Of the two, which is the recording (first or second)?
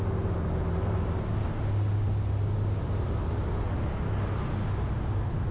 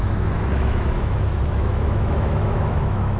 first